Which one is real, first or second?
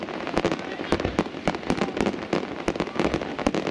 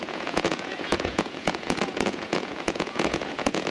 first